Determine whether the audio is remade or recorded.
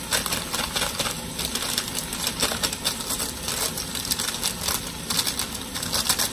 recorded